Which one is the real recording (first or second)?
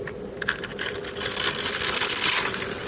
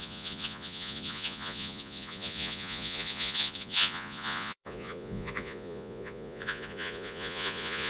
first